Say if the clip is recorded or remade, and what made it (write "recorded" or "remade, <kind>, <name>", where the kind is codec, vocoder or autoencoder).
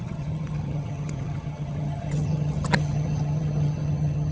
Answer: remade, vocoder, HiFi-GAN